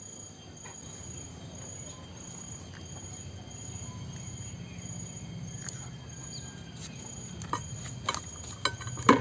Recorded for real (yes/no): yes